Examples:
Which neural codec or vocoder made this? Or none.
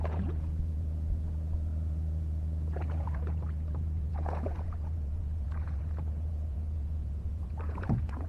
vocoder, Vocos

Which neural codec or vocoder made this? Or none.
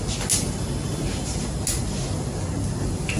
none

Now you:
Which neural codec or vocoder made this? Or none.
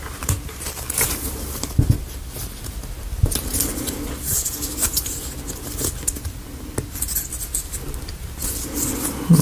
none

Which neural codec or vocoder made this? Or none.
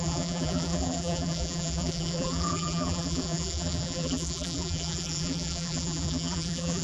vocoder, BigVGAN v2